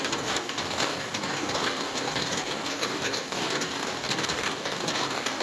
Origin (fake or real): fake